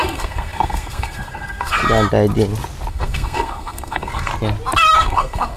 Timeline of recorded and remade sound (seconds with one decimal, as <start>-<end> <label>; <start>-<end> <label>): 0.0-1.8 remade; 1.8-2.9 recorded; 2.9-4.3 remade; 4.3-5.0 recorded; 5.0-5.6 remade